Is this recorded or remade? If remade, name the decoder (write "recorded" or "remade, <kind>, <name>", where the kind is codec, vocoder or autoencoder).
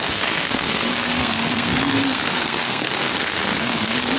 remade, codec, SNAC